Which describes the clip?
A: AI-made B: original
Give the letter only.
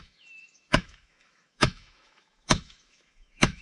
A